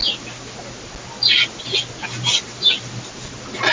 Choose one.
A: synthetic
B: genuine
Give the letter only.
B